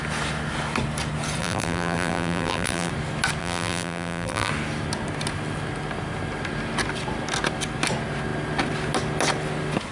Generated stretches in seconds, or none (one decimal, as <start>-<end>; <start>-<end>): 1.4-2.9; 3.4-4.5